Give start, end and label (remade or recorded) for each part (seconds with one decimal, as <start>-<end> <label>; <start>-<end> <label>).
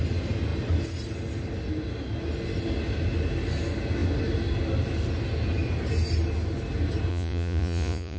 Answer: 0.0-7.1 recorded; 7.1-8.2 remade